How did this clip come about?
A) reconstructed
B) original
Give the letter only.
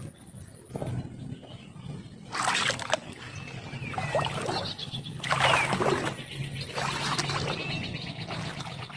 B